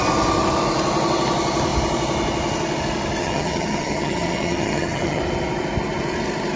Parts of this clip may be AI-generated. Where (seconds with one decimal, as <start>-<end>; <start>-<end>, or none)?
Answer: 3.2-5.2